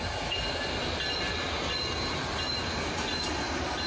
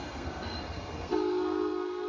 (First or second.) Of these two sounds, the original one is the first